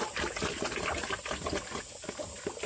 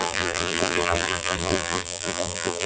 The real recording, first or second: first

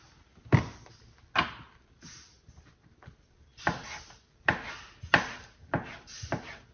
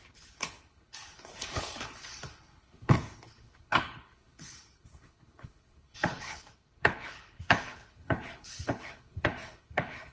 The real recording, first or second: first